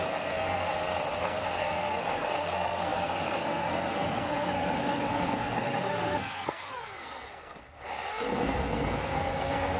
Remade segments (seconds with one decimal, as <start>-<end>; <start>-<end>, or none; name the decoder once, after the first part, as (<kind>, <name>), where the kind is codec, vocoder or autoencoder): 0.0-0.7 (codec, SNAC); 1.2-9.8